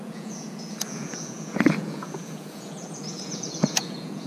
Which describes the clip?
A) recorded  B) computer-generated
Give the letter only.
B